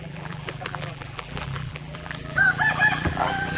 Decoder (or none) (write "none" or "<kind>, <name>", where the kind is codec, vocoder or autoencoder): vocoder, BigVGAN v2